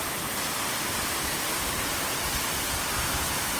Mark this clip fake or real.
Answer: real